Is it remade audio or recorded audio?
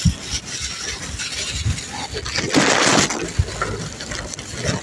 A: recorded